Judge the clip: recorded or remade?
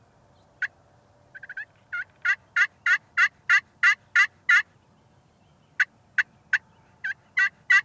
recorded